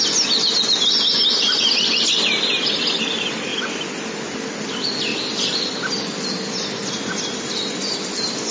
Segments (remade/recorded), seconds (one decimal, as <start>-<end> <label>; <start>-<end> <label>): 0.0-8.5 recorded